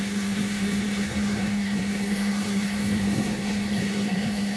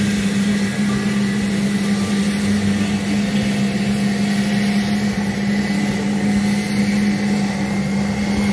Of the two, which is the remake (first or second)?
first